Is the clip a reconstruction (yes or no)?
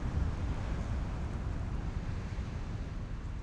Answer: no